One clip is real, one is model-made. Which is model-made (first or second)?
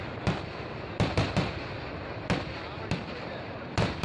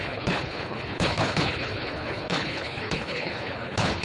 second